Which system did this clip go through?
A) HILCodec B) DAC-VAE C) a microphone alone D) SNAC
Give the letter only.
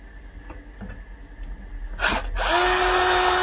C